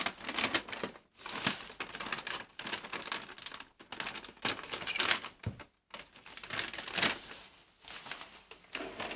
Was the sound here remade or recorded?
recorded